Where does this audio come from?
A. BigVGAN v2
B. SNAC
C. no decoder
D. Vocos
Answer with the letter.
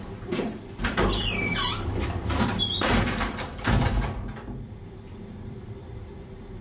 A